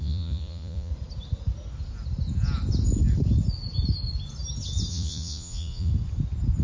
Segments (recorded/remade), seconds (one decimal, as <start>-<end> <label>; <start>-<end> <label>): 0.0-0.9 remade; 0.9-4.9 recorded; 4.9-5.9 remade; 5.9-6.6 recorded